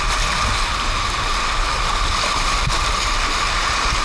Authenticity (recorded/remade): recorded